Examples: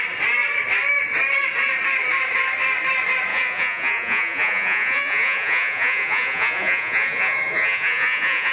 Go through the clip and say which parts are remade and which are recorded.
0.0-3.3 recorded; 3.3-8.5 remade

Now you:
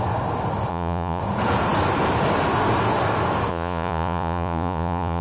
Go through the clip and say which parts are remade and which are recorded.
0.0-0.7 recorded; 0.7-1.2 remade; 1.2-3.5 recorded; 3.5-5.2 remade

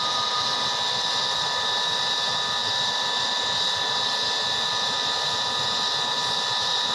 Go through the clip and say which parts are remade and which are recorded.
0.0-6.9 recorded

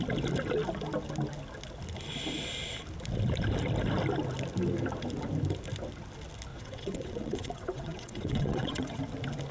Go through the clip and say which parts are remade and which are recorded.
0.0-6.5 recorded; 6.5-9.0 remade; 9.0-9.5 recorded

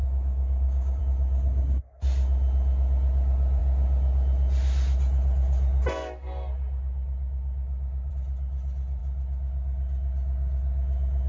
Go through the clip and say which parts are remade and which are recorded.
0.0-1.0 remade; 1.0-11.3 recorded

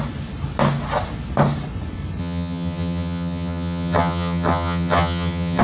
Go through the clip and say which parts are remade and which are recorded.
0.0-2.2 recorded; 2.2-5.6 remade

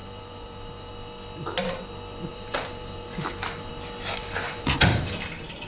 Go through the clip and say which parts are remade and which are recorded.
0.0-0.9 remade; 0.9-2.3 recorded; 2.3-3.7 remade; 3.7-4.2 recorded; 4.2-5.7 remade

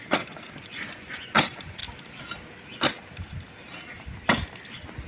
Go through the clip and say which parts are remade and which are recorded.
0.0-1.8 remade; 1.8-5.1 recorded